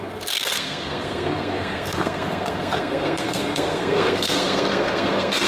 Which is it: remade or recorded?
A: remade